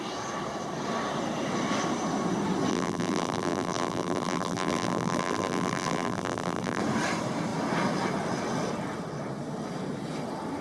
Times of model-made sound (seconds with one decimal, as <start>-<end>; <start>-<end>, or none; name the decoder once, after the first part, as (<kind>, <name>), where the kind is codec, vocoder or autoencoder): 2.7-6.8 (vocoder, BigVGAN v2)

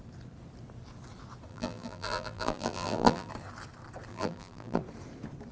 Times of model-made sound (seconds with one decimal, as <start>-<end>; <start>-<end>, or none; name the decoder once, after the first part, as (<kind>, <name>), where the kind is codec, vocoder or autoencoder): 1.5-3.3 (vocoder, BigVGAN v2); 4.1-4.8

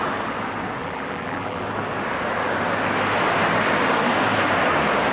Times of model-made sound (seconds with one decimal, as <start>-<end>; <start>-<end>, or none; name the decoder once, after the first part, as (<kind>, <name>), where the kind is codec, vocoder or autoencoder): 0.8-1.6 (vocoder, BigVGAN v2)

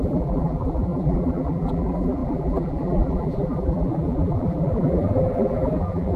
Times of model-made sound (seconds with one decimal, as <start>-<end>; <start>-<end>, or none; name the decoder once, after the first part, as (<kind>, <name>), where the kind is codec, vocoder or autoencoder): 0.0-6.2 (vocoder, BigVGAN v2)

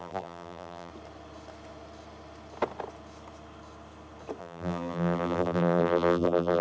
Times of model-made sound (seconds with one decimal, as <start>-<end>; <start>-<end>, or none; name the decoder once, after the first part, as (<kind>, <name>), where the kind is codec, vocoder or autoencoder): 0.0-0.9 (vocoder, BigVGAN v2); 4.4-6.6

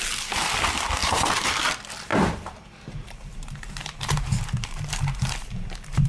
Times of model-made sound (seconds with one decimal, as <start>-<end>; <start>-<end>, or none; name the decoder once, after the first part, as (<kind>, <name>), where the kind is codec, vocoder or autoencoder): 1.0-1.6 (vocoder, BigVGAN v2); 2.1-6.1

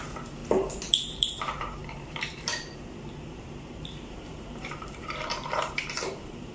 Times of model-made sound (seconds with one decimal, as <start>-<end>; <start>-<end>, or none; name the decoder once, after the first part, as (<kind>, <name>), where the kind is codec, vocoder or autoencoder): 0.0-0.4 (vocoder, BigVGAN v2); 0.9-6.5

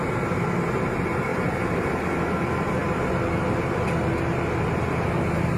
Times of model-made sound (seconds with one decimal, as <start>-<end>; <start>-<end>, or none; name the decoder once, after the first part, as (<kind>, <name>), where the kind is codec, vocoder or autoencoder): none